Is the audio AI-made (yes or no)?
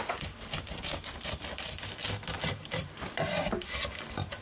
no